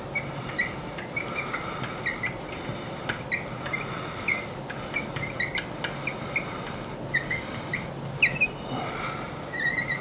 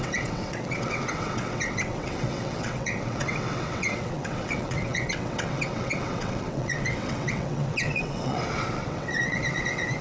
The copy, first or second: second